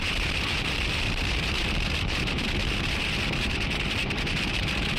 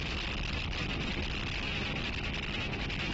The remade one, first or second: first